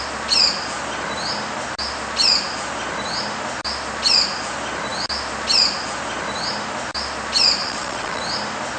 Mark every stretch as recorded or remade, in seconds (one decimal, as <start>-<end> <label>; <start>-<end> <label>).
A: 0.0-7.6 recorded; 7.6-8.2 remade; 8.2-8.8 recorded

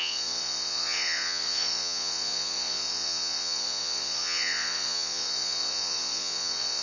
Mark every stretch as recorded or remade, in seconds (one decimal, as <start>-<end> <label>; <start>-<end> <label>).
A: 0.0-6.8 remade